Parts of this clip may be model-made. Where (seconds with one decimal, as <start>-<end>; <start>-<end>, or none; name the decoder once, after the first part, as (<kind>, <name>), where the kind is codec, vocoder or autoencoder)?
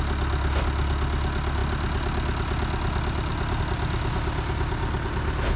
none